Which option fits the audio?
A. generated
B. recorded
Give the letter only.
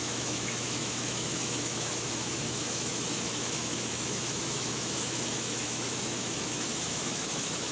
A